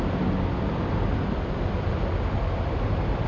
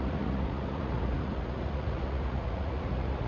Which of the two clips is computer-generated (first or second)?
second